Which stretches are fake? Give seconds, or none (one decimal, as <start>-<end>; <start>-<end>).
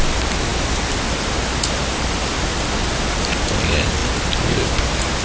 none